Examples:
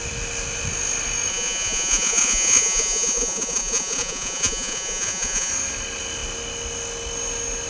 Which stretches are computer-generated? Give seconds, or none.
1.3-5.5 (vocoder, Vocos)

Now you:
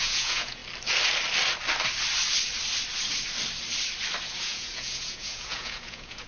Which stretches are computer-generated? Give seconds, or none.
0.0-0.6 (vocoder, Vocos); 4.2-6.3

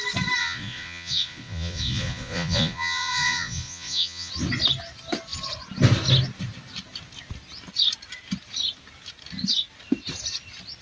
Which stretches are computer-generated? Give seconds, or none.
0.4-4.3 (vocoder, Vocos)

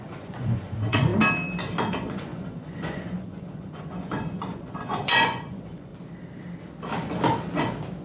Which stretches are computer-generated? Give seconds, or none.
0.0-1.1 (vocoder, Vocos); 1.9-5.9

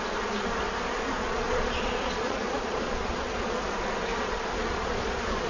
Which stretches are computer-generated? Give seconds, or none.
1.2-3.6 (vocoder, Vocos); 4.1-5.5

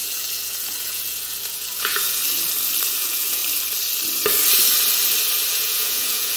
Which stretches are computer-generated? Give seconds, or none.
0.0-2.2 (vocoder, Vocos); 2.9-3.4; 5.5-6.4

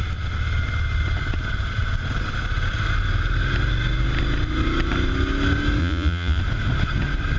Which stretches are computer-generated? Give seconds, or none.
5.8-6.4 (vocoder, Vocos)